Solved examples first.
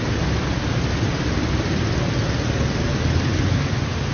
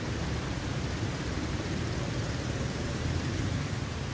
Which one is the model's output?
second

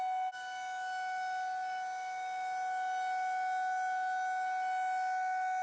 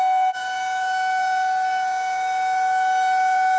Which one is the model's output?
second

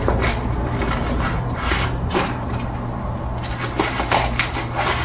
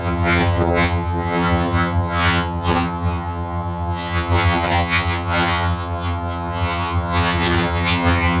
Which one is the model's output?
second